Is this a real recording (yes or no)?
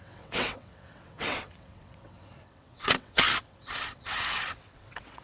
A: no